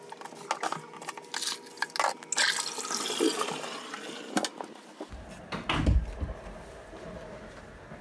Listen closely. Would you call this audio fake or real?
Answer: real